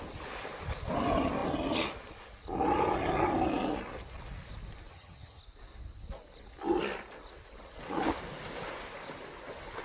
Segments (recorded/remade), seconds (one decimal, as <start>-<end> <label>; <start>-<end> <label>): 0.0-4.9 recorded; 4.9-5.4 remade; 5.4-9.8 recorded